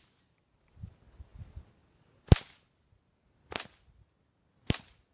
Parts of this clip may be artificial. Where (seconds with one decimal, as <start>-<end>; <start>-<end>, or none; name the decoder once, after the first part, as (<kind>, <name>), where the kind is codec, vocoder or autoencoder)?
none